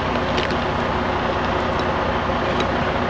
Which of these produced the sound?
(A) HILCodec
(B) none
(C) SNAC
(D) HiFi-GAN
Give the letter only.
B